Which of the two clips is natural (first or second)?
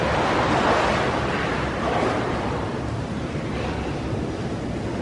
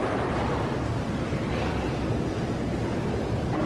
second